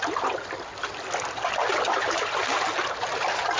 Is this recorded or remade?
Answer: recorded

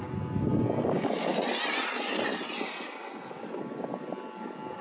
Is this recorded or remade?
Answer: recorded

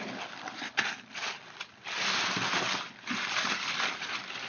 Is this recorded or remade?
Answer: recorded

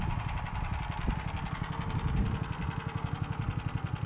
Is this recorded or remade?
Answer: recorded